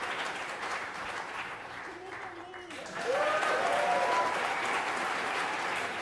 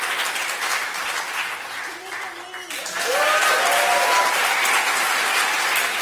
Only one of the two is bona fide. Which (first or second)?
second